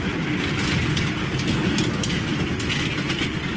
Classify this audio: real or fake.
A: real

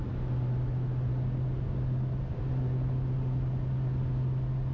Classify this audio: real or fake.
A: real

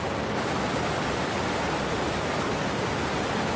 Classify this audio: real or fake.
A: real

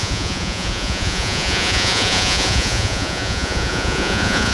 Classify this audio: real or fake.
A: fake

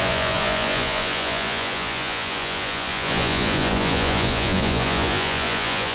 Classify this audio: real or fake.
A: fake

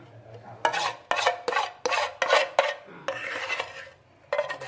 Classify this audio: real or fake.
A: real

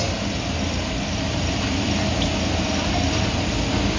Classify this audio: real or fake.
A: real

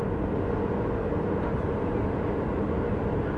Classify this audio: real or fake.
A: real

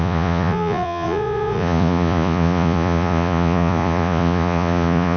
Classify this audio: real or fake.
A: fake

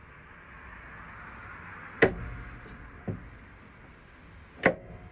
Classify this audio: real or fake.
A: real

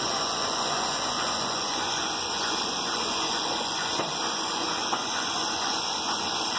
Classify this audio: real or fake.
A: fake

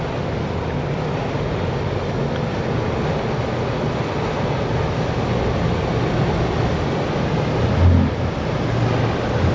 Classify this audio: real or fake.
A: real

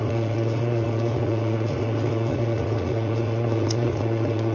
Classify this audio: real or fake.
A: fake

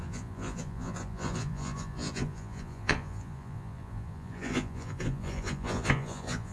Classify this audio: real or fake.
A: fake